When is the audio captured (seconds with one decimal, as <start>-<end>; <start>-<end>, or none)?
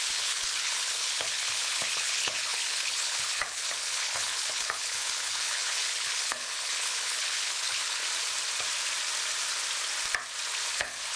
8.0-10.7